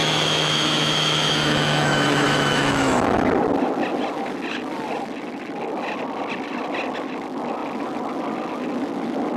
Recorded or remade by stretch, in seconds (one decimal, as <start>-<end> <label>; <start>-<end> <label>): 0.0-3.3 remade; 3.3-9.4 recorded